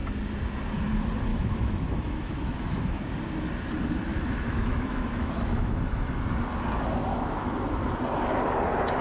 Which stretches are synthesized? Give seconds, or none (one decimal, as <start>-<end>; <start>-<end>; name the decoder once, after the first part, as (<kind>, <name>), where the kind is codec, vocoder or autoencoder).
1.3-3.0 (autoencoder, DAC-VAE); 4.1-6.1; 7.1-7.8